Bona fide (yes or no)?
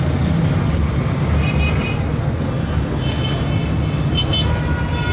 yes